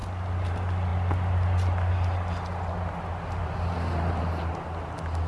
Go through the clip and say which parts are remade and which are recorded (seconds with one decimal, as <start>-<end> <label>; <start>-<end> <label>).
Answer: 0.0-5.3 recorded

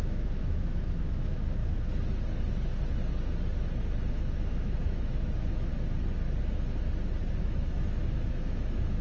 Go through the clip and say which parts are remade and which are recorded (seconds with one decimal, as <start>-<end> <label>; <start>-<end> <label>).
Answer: 0.0-1.6 remade; 1.6-4.1 recorded; 4.1-5.7 remade; 5.7-7.4 recorded; 7.4-9.0 remade

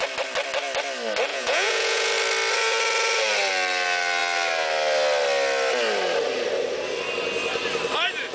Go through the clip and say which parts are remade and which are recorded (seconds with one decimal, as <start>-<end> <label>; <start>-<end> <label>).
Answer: 0.0-1.3 recorded; 1.3-2.1 remade; 2.1-8.3 recorded